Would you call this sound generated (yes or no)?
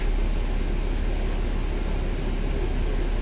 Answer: no